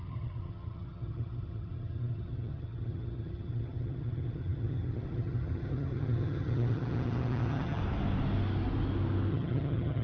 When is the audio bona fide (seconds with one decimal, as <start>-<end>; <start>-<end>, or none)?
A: 7.8-9.3